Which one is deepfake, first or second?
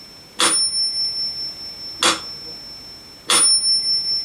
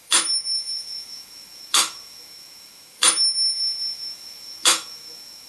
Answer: second